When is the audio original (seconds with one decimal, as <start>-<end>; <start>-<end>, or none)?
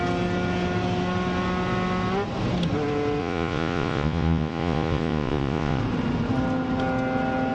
0.0-3.2; 5.8-7.5